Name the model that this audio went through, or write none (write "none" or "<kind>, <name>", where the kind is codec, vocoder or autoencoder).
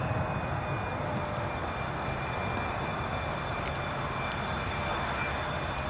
none